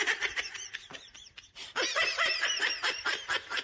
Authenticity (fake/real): real